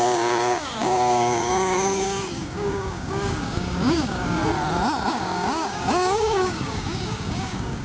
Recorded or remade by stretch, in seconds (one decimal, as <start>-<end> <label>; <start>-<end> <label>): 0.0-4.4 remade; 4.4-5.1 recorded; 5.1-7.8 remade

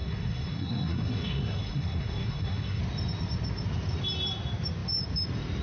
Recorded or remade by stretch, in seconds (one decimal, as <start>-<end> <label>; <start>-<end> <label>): 0.0-2.8 remade; 2.8-5.6 recorded

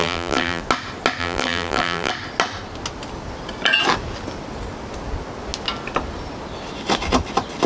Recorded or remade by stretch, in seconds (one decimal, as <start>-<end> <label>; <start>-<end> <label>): 0.0-0.6 remade; 0.6-1.2 recorded; 1.2-2.1 remade; 2.1-7.7 recorded

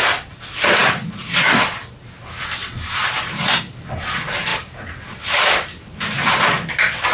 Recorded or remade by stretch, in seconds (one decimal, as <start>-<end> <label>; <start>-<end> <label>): 0.0-0.8 recorded; 0.8-1.8 remade; 1.8-2.6 recorded; 2.6-3.6 remade; 3.6-4.5 recorded; 4.5-7.1 remade

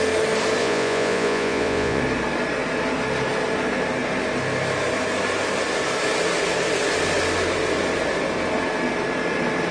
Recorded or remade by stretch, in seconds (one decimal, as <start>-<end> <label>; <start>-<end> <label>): 0.0-0.6 recorded; 0.6-2.0 remade; 2.0-9.7 recorded

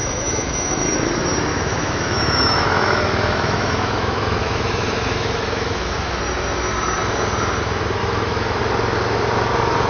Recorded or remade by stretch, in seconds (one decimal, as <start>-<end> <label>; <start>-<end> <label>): 0.0-1.1 remade; 1.1-1.5 recorded; 1.5-6.2 remade; 6.2-8.0 recorded; 8.0-8.6 remade; 8.6-9.9 recorded